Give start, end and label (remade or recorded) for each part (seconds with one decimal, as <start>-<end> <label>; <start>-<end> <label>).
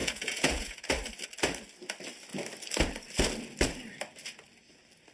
0.0-0.9 remade; 0.9-5.1 recorded